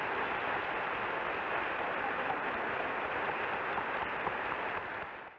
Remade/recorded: recorded